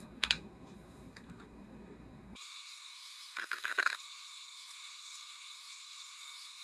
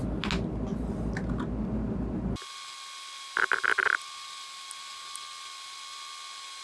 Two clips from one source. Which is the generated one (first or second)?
first